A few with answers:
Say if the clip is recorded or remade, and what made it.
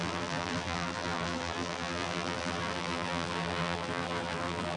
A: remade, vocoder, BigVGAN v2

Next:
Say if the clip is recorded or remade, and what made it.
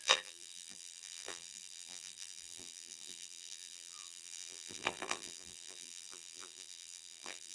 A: remade, vocoder, BigVGAN v2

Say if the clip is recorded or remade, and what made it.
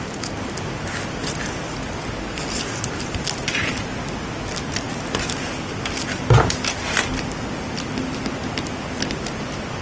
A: recorded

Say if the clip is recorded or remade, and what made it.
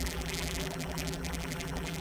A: remade, vocoder, BigVGAN v2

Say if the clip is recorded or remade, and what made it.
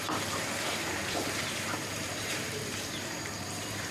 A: remade, vocoder, BigVGAN v2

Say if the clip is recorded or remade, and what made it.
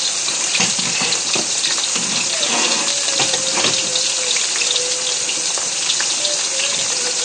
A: recorded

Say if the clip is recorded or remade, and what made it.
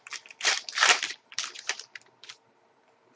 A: remade, vocoder, BigVGAN v2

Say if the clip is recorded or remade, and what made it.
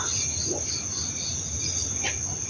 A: recorded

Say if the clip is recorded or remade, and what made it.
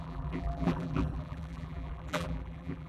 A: remade, vocoder, BigVGAN v2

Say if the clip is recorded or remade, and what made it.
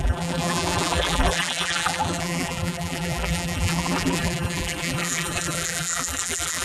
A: remade, vocoder, BigVGAN v2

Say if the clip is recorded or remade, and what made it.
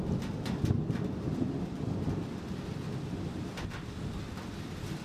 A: recorded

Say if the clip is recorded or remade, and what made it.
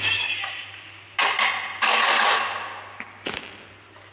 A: recorded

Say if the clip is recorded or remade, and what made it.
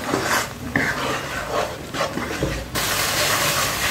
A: remade, vocoder, BigVGAN v2